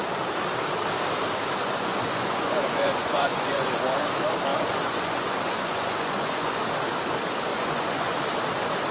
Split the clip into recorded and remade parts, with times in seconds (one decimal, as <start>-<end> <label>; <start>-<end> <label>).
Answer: 0.0-1.6 recorded; 1.6-3.7 remade; 3.7-4.5 recorded; 4.5-6.6 remade; 6.6-7.5 recorded; 7.5-8.2 remade; 8.2-8.9 recorded